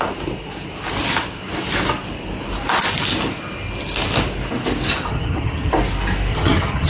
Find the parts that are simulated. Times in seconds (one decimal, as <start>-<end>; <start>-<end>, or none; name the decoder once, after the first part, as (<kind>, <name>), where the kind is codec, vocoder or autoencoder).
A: 5.1-5.7 (vocoder, HiFi-GAN); 6.3-6.9